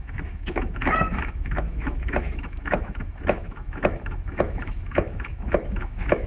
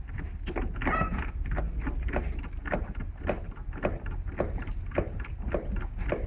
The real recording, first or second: second